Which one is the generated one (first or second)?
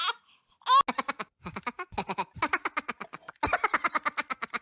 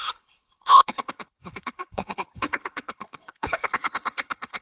second